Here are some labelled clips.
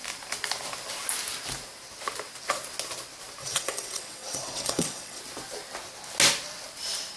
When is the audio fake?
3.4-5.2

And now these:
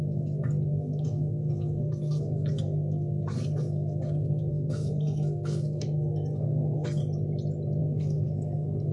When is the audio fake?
0.0-7.0; 7.8-8.9

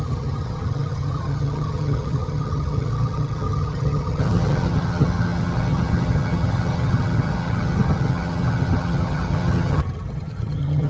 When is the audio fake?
0.0-10.9

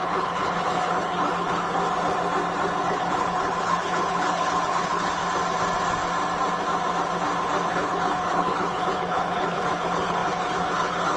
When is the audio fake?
0.0-1.8; 2.9-5.2; 7.7-11.2

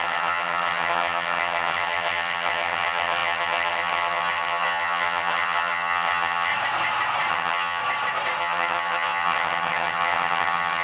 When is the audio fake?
0.0-6.5; 7.3-7.8; 8.4-10.8

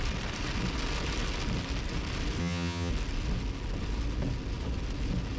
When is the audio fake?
2.4-2.9